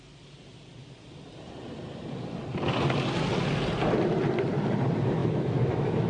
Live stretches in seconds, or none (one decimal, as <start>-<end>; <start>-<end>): 0.0-5.2